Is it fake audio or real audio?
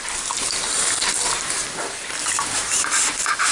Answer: real